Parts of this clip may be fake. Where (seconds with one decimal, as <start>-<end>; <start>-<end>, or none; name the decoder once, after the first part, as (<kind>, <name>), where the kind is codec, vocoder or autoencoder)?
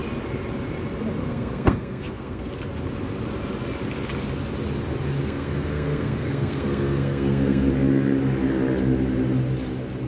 1.2-2.5 (codec, SNAC); 5.2-7.7